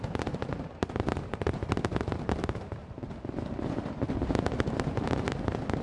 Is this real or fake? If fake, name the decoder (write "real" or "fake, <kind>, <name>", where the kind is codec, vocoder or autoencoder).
fake, vocoder, BigVGAN v2